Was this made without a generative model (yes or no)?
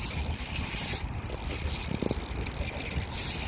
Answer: yes